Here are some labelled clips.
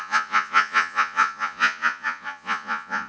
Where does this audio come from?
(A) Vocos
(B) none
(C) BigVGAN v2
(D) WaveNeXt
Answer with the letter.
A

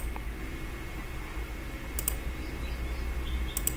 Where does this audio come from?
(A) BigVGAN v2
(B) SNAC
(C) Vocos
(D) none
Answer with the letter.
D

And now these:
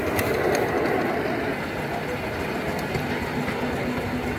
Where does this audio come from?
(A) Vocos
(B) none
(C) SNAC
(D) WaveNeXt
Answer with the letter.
B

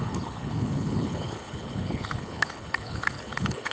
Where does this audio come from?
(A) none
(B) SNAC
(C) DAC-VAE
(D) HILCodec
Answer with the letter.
D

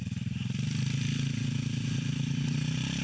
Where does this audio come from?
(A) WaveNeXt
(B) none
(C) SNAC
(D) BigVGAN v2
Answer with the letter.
B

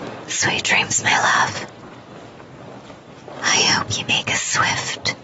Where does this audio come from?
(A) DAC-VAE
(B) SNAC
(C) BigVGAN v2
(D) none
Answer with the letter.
D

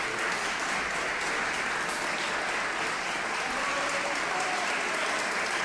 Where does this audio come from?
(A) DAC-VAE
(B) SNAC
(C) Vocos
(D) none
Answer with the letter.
D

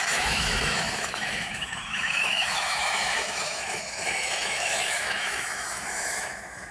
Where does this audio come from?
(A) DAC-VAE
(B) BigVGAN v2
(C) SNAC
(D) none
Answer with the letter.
A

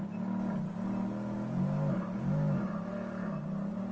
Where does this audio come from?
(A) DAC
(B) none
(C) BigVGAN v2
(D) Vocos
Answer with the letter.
B